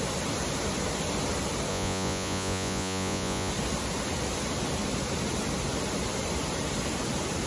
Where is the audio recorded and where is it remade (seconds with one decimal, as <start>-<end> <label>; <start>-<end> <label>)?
0.0-1.7 recorded; 1.7-3.5 remade; 3.5-7.5 recorded